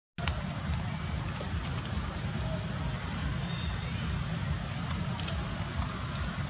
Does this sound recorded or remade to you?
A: recorded